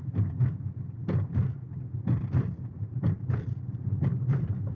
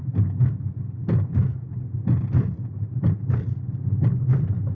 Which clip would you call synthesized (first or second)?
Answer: first